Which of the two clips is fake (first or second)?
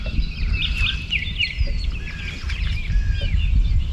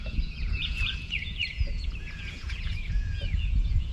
second